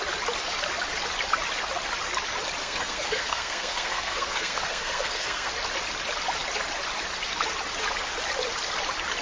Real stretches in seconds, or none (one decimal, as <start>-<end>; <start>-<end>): 0.0-2.6; 5.5-9.2